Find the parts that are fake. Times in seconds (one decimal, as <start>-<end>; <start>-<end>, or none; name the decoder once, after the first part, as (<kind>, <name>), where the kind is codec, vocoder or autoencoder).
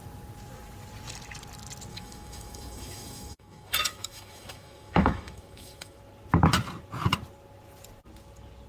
1.9-6.0 (autoencoder, DAC-VAE)